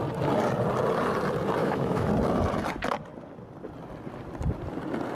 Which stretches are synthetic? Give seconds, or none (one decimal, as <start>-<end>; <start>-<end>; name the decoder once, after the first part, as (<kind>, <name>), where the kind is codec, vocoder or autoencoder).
1.6-2.1 (autoencoder, DAC-VAE)